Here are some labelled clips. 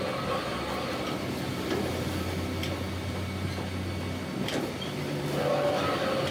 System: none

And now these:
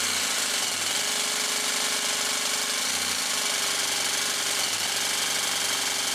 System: none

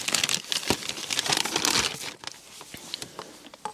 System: none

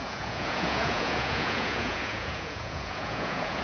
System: vocoder, Vocos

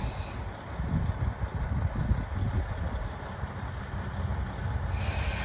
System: none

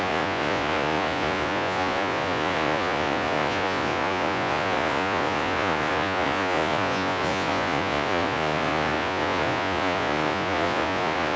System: vocoder, Vocos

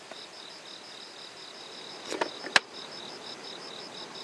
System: none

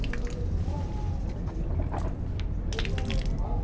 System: none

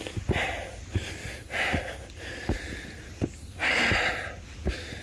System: none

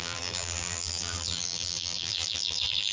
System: vocoder, BigVGAN v2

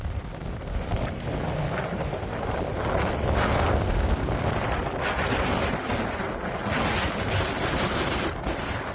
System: none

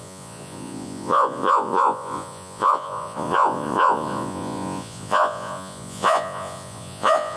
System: vocoder, Vocos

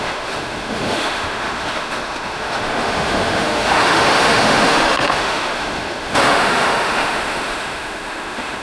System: autoencoder, DAC-VAE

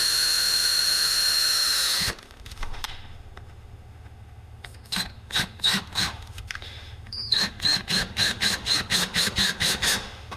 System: autoencoder, DAC-VAE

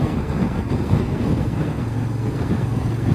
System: codec, SNAC